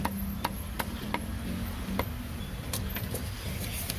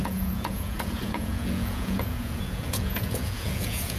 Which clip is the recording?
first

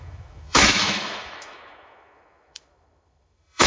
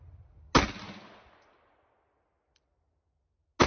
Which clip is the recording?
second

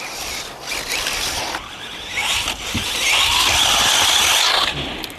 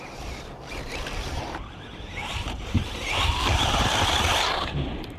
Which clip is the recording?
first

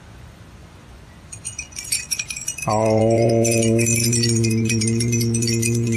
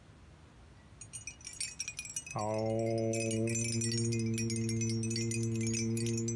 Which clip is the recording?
second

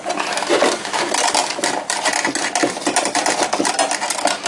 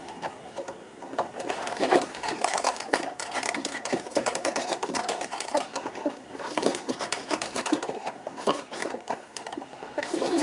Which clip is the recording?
first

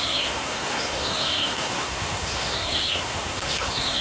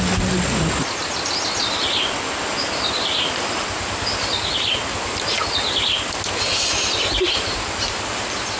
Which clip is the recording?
second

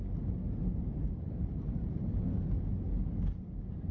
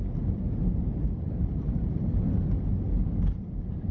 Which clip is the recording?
first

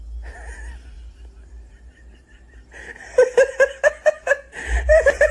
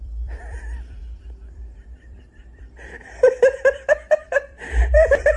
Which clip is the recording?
first